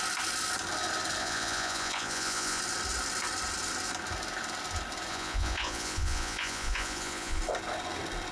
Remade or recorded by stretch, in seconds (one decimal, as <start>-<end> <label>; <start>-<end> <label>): 0.0-1.2 recorded; 1.2-2.6 remade; 2.6-5.1 recorded; 5.1-7.4 remade; 7.4-8.3 recorded